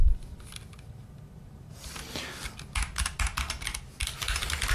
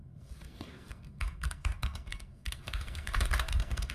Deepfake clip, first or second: second